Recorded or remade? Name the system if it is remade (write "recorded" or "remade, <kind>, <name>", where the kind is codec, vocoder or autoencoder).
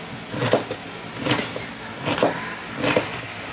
recorded